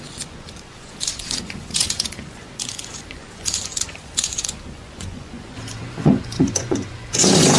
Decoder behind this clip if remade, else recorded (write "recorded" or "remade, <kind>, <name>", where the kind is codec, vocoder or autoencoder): remade, vocoder, Vocos